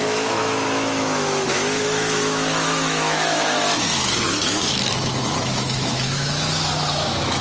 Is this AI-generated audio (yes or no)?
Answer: yes